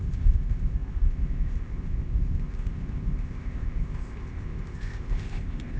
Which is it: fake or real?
fake